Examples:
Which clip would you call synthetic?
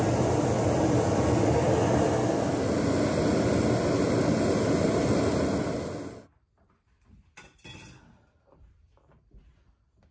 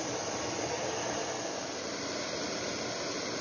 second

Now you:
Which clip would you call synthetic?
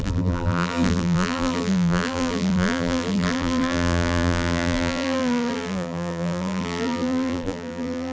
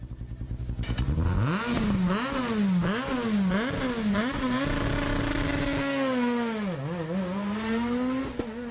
first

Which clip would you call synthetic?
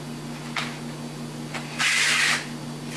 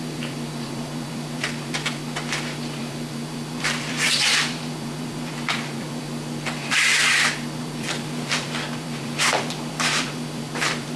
second